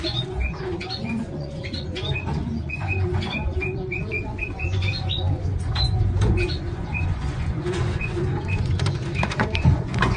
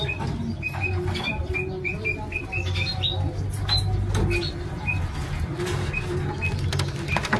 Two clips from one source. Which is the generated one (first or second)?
first